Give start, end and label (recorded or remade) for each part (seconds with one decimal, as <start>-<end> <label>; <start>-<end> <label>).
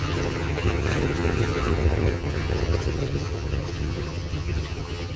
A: 0.0-5.2 remade